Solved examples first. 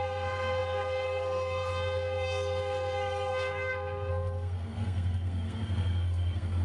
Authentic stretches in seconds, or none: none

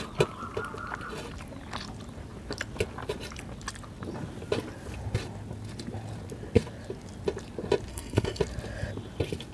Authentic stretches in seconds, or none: 0.0-7.9; 8.4-9.5

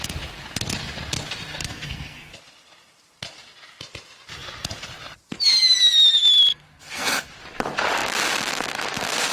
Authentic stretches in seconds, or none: 0.0-1.6; 2.3-6.5; 7.3-9.3

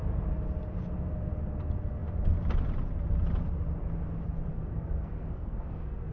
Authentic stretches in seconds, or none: 0.0-4.5

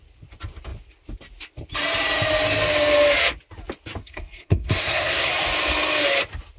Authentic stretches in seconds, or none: 0.0-4.0; 5.3-6.6

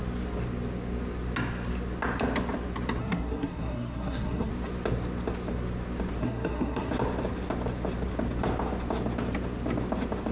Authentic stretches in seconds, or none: 0.0-3.0; 4.5-6.2; 6.9-10.3

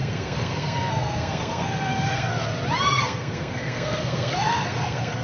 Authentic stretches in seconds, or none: 2.3-2.9

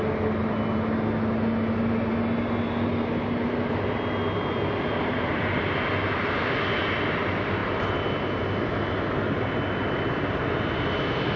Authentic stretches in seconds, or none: 0.0-11.4